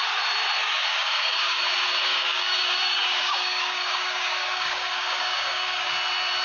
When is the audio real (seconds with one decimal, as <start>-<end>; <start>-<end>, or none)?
0.0-0.6; 1.6-2.1; 5.9-6.4